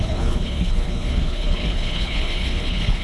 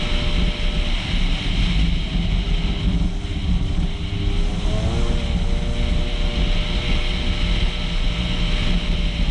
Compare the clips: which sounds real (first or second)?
second